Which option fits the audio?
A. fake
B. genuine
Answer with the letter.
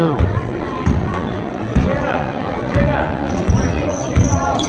A